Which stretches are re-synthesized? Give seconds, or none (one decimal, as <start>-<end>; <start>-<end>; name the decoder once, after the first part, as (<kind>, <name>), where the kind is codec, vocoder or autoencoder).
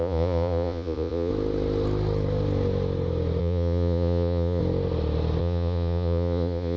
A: 0.0-1.3 (vocoder, Vocos); 3.4-4.6; 5.4-6.8